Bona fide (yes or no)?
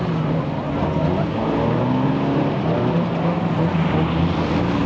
yes